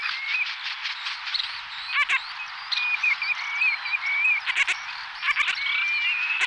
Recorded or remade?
recorded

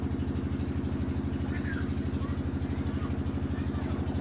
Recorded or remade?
recorded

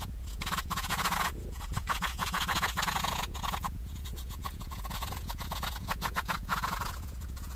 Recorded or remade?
remade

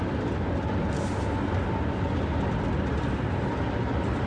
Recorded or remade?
recorded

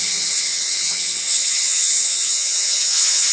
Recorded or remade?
remade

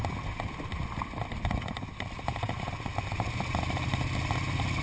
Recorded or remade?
recorded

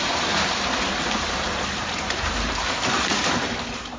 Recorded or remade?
remade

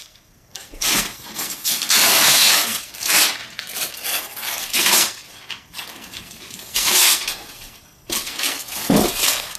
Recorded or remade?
remade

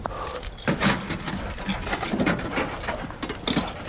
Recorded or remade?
recorded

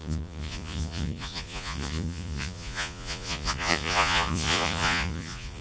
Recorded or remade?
remade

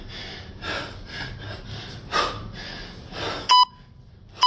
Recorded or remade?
recorded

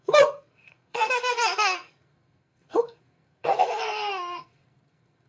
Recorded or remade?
remade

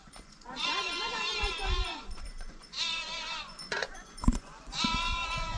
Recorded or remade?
remade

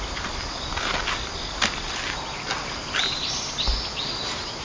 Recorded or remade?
recorded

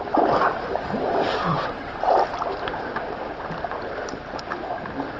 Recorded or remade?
remade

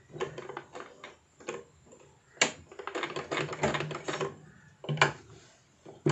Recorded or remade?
recorded